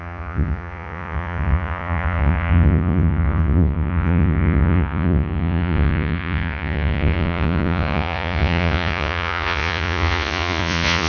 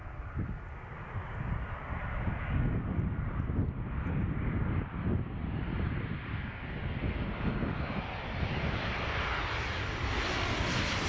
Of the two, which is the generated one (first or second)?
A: first